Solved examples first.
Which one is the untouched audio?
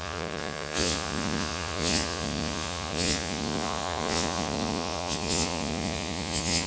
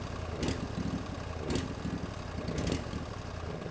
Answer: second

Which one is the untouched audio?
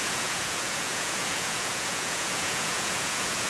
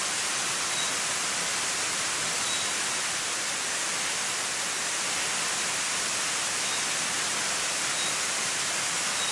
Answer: second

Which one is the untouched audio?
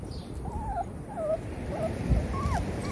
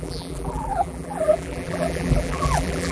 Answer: first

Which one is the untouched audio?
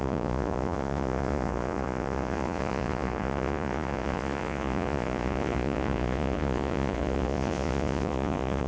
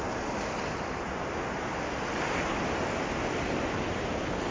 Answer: second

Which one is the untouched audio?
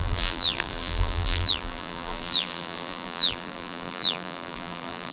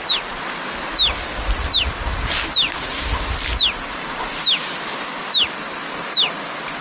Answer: second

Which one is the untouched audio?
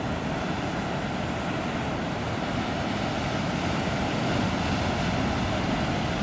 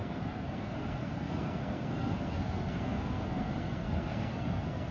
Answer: first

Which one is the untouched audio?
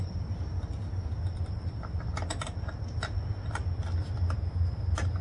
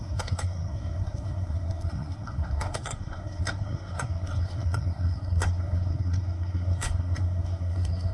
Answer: first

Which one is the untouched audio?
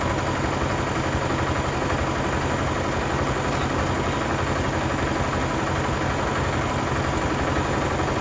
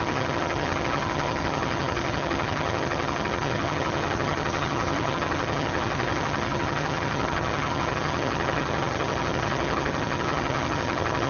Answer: first